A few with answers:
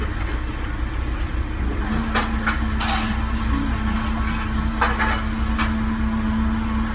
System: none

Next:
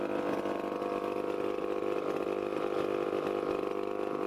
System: none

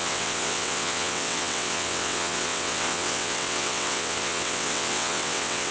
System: vocoder, WaveNeXt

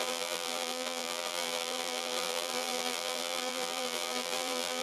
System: vocoder, BigVGAN v2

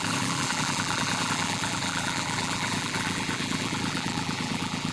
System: vocoder, BigVGAN v2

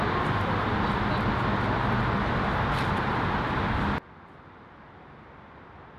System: none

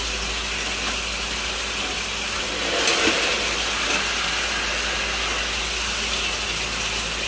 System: none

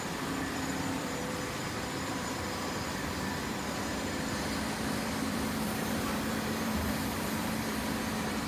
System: vocoder, BigVGAN v2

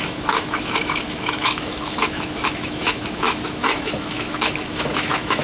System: autoencoder, DAC-VAE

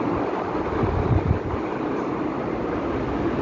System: none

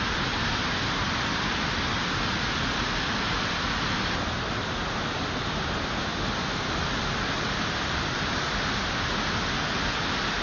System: none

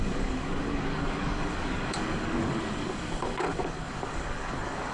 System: codec, DAC